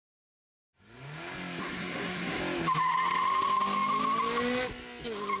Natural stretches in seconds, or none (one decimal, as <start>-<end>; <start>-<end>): 0.0-1.6; 2.4-5.4